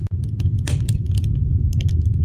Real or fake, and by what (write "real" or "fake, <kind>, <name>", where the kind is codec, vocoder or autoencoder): real